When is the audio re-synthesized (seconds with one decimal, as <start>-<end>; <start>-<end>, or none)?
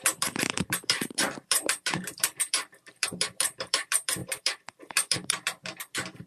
0.0-6.3